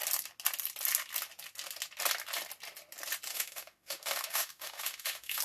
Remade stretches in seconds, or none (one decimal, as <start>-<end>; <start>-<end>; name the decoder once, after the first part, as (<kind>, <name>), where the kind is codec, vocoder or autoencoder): 3.3-5.4 (autoencoder, DAC-VAE)

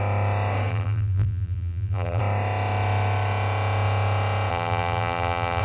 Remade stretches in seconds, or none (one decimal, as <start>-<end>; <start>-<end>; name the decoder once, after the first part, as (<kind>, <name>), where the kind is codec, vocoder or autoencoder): 0.7-2.2 (vocoder, BigVGAN v2); 4.5-5.6

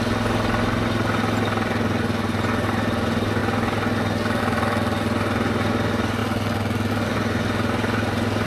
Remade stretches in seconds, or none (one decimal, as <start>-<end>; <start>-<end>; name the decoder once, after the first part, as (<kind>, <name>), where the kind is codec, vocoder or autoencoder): none

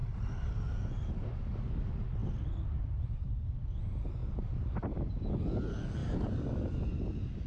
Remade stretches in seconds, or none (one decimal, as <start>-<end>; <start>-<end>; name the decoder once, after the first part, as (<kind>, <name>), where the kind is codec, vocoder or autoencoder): 0.0-0.6 (vocoder, BigVGAN v2); 6.0-7.5

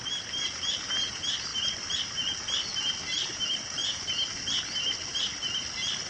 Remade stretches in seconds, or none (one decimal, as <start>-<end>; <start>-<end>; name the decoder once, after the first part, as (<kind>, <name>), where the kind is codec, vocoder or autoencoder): none

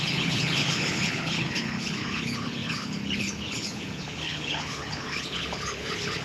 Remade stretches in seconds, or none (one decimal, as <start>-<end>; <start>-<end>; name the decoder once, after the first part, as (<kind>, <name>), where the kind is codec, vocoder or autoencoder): 0.0-6.2 (codec, HILCodec)

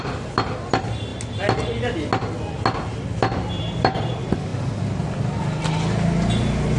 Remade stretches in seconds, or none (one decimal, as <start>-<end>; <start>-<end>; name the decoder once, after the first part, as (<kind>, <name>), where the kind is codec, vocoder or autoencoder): 0.0-1.1 (vocoder, BigVGAN v2); 3.6-4.5